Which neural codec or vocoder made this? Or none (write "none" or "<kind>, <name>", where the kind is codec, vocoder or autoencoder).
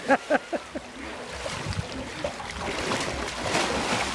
none